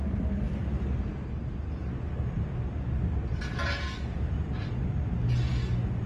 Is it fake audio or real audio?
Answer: real